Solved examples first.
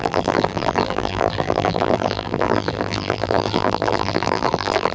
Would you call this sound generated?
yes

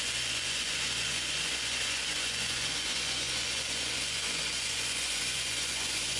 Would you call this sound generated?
yes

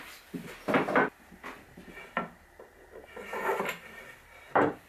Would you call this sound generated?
no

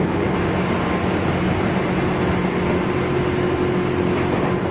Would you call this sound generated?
no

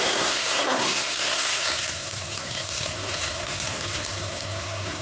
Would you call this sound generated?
yes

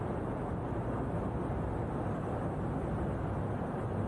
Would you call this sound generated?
no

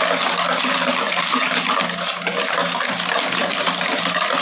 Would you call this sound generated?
no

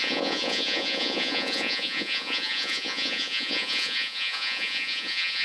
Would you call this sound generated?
yes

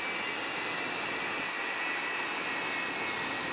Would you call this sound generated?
no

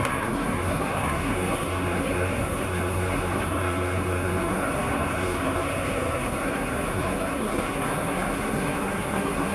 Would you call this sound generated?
yes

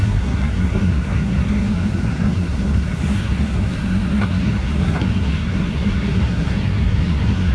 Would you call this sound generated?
yes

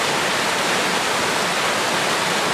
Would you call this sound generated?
no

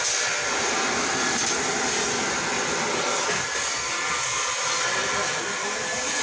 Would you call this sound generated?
no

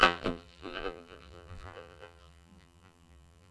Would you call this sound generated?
yes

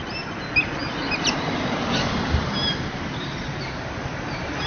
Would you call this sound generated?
no